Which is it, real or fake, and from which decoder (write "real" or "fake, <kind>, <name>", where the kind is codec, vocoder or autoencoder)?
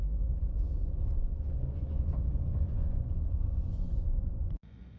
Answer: fake, vocoder, Vocos